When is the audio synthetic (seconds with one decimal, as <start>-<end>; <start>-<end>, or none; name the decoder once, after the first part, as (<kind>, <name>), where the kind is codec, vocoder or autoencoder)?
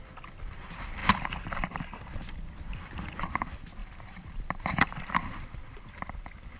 3.8-5.0 (vocoder, BigVGAN v2)